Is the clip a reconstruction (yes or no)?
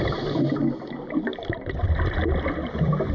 no